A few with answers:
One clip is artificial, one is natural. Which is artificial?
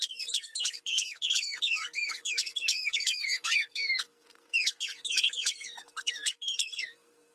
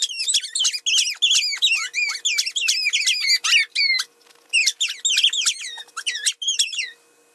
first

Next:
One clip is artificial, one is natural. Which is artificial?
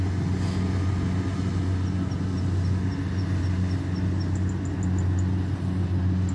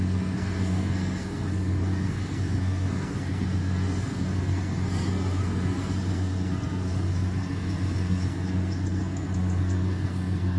second